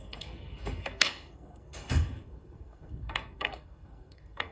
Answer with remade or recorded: remade